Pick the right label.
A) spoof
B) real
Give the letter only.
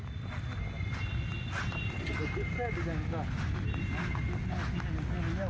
B